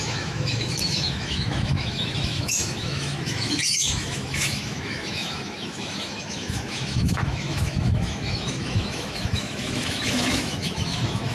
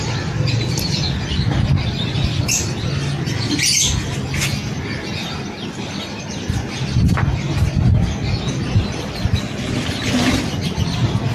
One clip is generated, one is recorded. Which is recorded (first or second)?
second